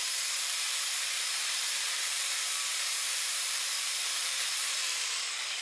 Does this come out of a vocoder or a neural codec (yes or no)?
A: yes